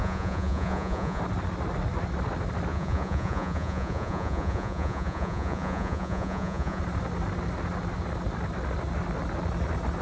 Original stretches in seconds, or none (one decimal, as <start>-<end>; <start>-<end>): 1.2-2.7; 6.8-10.0